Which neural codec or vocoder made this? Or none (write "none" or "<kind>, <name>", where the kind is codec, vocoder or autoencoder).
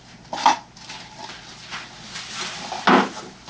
none